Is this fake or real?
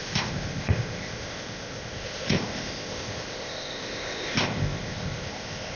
fake